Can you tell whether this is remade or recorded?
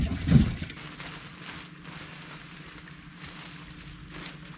recorded